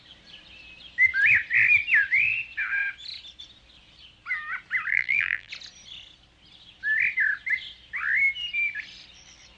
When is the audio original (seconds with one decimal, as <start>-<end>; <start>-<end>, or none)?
0.0-4.9; 5.5-9.6

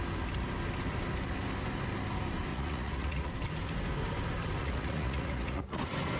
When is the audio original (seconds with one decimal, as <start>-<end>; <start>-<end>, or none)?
0.0-2.5; 3.3-4.6; 5.8-6.2